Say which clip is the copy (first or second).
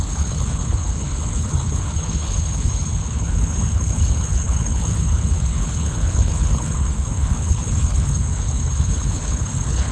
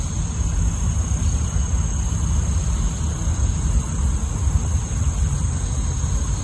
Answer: first